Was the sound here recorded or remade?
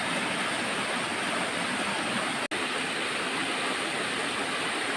recorded